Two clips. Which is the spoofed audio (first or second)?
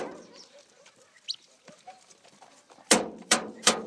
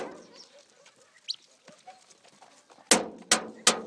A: first